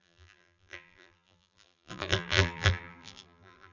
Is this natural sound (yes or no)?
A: no